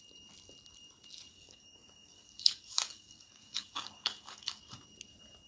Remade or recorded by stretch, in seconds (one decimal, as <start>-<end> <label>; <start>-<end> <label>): 0.0-1.3 recorded; 1.3-4.6 remade; 4.6-5.5 recorded